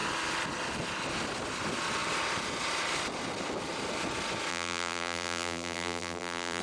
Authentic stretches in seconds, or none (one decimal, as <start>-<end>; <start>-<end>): 0.0-4.5